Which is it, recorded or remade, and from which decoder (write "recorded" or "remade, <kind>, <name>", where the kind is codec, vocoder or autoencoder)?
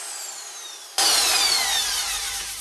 recorded